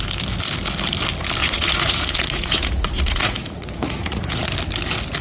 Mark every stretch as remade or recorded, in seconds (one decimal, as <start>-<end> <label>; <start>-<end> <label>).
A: 0.0-1.4 recorded; 1.4-4.5 remade; 4.5-5.2 recorded